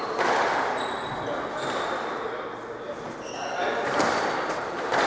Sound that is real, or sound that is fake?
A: real